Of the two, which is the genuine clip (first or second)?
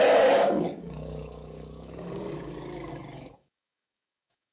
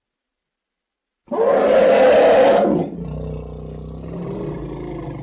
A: second